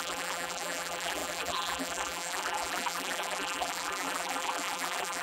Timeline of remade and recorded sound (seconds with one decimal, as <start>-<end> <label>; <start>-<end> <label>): 0.0-5.2 remade